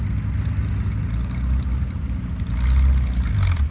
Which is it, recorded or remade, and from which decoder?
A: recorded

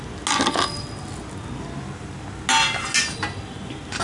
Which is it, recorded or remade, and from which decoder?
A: recorded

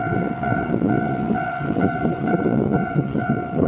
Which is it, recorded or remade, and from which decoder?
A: remade, vocoder, WaveNeXt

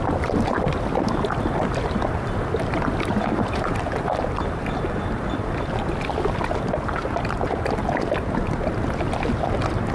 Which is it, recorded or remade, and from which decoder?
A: remade, vocoder, BigVGAN v2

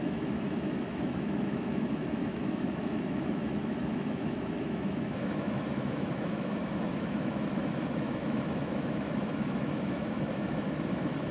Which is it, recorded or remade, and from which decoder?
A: remade, autoencoder, DAC-VAE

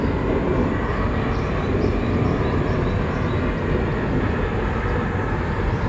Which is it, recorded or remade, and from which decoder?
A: recorded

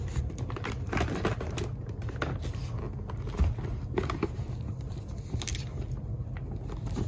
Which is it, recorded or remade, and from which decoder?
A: recorded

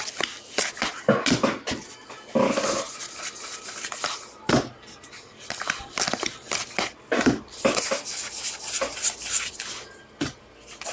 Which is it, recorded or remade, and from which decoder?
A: recorded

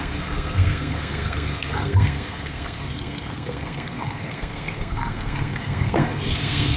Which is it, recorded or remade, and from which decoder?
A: remade, codec, SNAC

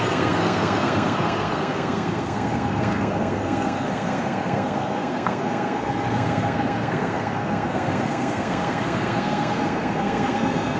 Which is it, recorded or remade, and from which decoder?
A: remade, codec, SNAC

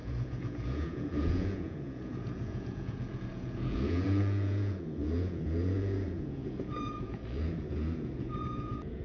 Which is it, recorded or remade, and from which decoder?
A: remade, vocoder, Vocos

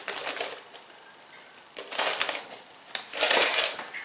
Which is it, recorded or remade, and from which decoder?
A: recorded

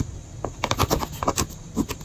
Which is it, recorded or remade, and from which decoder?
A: recorded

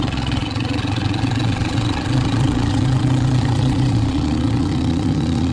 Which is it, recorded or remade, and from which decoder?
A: remade, vocoder, Vocos